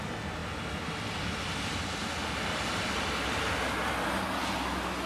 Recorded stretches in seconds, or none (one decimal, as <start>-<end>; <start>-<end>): 0.0-5.1